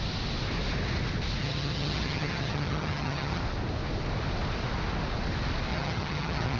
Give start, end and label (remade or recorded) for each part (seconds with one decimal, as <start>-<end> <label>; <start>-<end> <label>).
0.0-1.4 recorded; 1.4-3.4 remade; 3.4-5.7 recorded; 5.7-6.6 remade